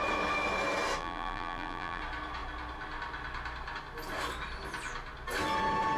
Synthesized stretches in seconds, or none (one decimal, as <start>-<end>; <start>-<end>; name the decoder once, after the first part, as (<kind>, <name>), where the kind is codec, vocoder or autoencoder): 1.0-2.0 (vocoder, BigVGAN v2)